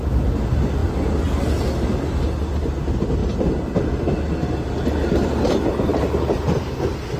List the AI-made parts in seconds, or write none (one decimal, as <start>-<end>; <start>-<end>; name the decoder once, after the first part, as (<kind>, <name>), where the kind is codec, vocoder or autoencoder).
none